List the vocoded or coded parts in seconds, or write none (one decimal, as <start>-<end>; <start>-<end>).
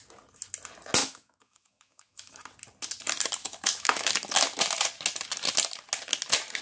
1.0-2.3; 3.4-4.1